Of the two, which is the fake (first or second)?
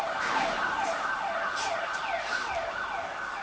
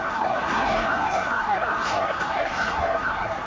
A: second